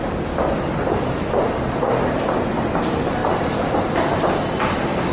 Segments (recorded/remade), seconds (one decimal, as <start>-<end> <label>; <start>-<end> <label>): 0.0-5.1 recorded